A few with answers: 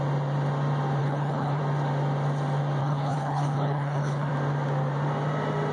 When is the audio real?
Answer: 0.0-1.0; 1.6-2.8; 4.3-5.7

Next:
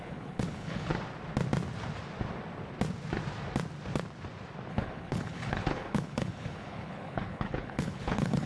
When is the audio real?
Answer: 0.9-4.7

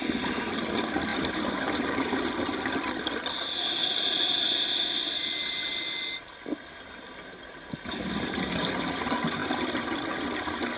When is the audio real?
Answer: 0.0-10.8